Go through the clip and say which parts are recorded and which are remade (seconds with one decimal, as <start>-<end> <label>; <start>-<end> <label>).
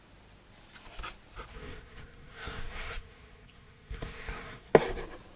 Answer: 0.0-1.5 recorded; 1.5-4.7 remade; 4.7-5.4 recorded